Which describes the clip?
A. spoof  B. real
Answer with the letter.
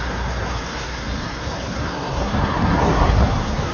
A